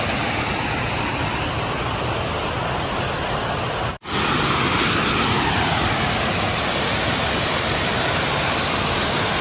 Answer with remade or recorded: recorded